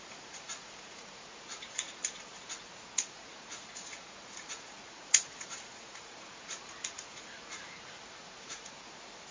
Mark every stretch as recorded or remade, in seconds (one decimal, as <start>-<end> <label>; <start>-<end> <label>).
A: 0.0-9.3 remade